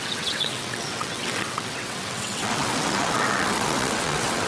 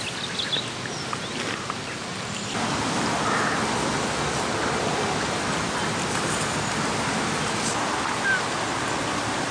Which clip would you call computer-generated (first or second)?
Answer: first